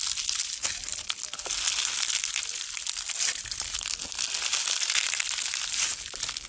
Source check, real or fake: real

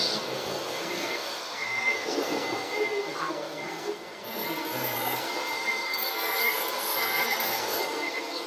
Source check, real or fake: fake